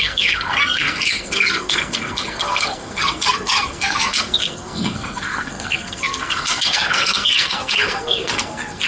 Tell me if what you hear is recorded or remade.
remade